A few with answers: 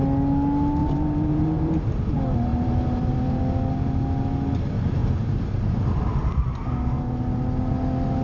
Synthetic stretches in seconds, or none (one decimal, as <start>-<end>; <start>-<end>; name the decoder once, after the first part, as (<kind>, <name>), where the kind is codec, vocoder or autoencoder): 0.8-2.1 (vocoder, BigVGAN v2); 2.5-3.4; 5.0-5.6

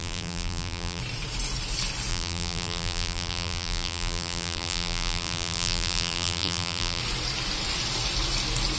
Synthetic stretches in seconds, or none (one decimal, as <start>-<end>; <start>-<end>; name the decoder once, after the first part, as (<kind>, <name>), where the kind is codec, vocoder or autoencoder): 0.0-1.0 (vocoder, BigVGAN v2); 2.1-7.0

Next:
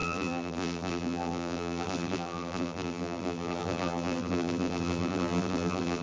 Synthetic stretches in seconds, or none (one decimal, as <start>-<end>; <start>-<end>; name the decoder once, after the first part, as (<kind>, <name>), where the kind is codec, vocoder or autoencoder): 0.0-6.0 (vocoder, BigVGAN v2)

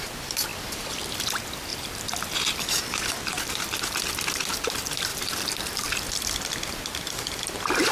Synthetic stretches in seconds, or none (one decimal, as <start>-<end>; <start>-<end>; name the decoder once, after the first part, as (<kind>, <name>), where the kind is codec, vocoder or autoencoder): 0.5-1.0 (vocoder, BigVGAN v2); 1.7-3.5; 5.1-7.9

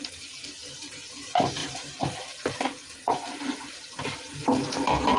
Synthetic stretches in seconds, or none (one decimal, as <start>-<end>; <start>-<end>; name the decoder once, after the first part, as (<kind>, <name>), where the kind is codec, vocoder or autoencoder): 0.0-5.2 (vocoder, BigVGAN v2)

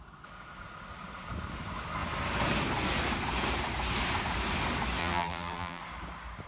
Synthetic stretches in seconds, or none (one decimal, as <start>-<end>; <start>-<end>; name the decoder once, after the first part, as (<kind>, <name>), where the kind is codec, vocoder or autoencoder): 5.0-5.8 (vocoder, BigVGAN v2)

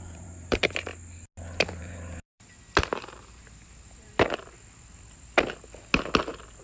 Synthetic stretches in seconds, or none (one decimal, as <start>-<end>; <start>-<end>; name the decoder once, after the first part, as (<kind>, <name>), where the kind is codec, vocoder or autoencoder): 0.0-0.9 (vocoder, BigVGAN v2); 1.7-2.5; 3.0-4.1

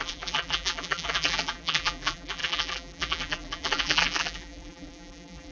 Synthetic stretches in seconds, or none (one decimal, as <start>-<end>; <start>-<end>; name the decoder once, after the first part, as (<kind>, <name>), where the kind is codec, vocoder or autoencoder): 0.0-5.5 (vocoder, BigVGAN v2)